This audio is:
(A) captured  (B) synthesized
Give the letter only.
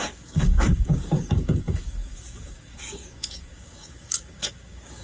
B